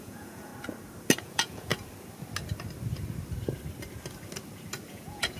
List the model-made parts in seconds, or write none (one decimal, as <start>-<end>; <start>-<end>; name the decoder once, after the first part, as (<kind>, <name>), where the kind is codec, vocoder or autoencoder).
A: 0.0-0.5 (vocoder, Vocos); 1.2-1.7; 4.9-5.4